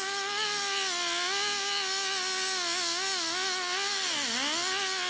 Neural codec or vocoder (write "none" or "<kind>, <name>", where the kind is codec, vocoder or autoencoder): none